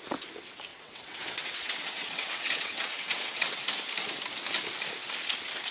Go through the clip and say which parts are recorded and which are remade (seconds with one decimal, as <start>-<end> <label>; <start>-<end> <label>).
0.0-0.7 recorded; 0.7-3.6 remade; 3.6-5.7 recorded